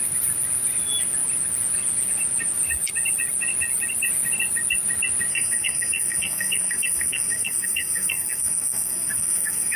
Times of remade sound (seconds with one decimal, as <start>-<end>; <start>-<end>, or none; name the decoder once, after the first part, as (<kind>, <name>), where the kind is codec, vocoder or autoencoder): 5.3-9.8 (codec, SNAC)